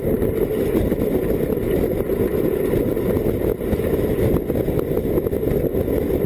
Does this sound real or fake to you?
real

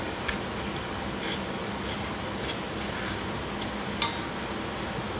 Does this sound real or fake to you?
real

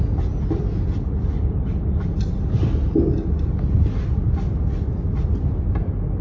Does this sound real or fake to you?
real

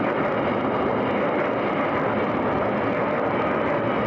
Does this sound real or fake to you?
real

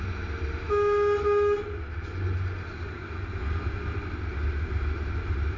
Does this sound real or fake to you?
real